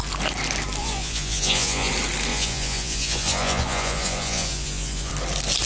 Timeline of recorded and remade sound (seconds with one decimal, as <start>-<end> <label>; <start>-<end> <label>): 0.0-0.8 recorded; 0.8-1.9 remade; 1.9-2.3 recorded; 2.3-5.1 remade; 5.1-5.7 recorded